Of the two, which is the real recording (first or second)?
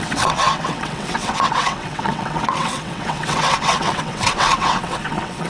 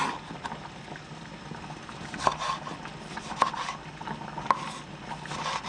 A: second